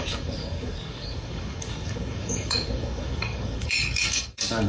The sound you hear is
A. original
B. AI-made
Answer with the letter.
B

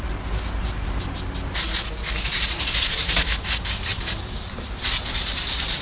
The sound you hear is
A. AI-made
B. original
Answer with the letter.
B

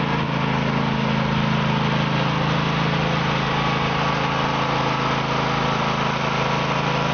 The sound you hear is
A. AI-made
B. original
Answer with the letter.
B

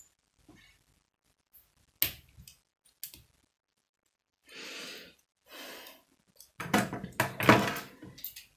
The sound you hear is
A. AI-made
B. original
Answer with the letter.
B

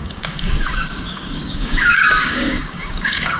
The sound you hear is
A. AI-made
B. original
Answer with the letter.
A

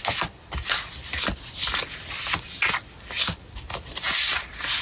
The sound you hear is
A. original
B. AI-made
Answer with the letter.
A